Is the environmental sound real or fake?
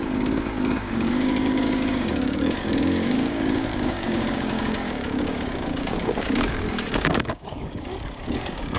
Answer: fake